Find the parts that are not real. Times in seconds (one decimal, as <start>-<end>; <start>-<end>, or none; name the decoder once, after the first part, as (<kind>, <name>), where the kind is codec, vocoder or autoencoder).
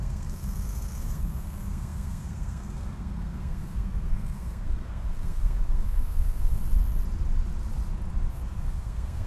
0.0-6.6 (codec, SNAC); 8.3-9.3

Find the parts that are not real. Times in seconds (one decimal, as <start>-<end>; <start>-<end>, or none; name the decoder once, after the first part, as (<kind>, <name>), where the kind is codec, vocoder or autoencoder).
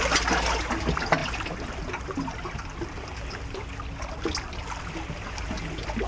none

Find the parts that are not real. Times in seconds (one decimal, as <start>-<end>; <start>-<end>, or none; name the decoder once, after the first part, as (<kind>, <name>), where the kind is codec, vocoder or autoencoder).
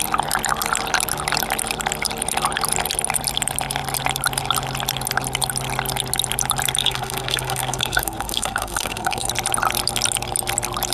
6.8-9.3 (codec, SNAC)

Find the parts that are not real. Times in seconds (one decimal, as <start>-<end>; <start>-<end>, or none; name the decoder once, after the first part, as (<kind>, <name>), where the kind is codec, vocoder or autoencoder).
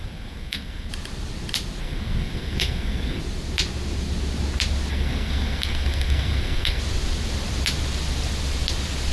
0.0-0.9 (codec, SNAC); 1.8-3.2; 4.9-6.8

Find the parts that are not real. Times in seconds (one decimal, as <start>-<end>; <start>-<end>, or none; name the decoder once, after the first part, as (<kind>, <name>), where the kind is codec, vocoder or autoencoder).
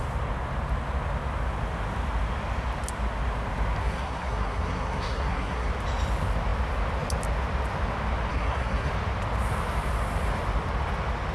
3.8-5.7 (codec, SNAC); 8.3-8.9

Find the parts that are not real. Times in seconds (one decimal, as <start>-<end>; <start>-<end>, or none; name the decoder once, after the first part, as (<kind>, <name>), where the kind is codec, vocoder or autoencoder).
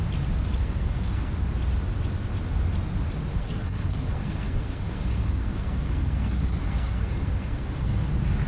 0.6-1.3 (codec, SNAC); 3.3-8.1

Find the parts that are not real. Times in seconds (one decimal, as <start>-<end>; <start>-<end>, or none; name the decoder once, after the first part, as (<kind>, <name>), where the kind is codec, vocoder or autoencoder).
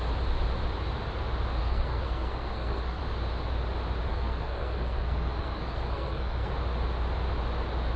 1.6-3.0 (codec, SNAC); 4.1-6.5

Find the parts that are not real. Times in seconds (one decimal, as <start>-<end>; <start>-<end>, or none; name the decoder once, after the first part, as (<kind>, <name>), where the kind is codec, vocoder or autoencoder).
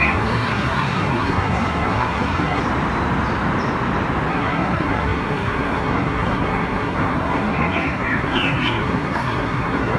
0.0-2.6 (codec, SNAC); 4.3-10.0